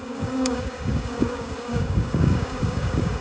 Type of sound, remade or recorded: remade